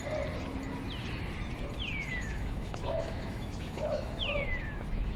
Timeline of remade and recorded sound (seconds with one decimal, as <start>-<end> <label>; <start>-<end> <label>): 0.0-2.1 recorded; 2.1-5.2 remade